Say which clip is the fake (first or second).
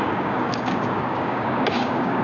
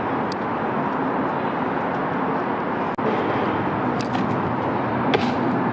first